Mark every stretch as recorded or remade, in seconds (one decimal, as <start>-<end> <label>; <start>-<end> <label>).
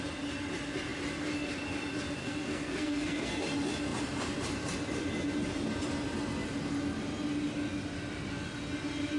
0.0-2.2 recorded; 2.2-3.4 remade; 3.4-9.2 recorded